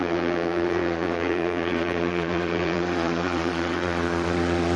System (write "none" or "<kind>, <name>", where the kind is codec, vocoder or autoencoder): vocoder, Vocos